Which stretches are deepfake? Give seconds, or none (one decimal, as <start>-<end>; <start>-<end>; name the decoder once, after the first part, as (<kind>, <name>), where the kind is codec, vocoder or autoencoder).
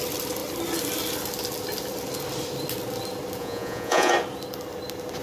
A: 3.4-4.1 (vocoder, Vocos)